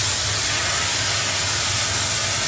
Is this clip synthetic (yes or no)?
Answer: no